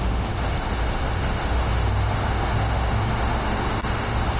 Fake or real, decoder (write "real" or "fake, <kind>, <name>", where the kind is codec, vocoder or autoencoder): fake, autoencoder, DAC-VAE